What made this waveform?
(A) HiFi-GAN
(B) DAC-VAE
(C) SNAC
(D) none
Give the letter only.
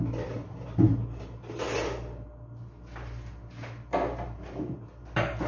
D